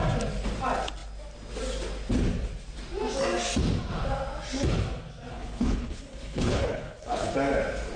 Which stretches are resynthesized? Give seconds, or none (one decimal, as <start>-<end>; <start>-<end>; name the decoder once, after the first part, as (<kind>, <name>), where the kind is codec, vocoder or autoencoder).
5.3-7.3 (codec, HILCodec)

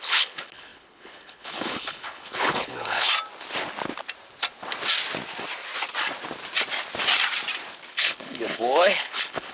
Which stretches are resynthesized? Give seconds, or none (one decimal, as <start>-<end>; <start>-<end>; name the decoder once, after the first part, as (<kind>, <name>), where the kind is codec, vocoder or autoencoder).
0.0-3.1 (codec, HILCodec); 7.9-9.5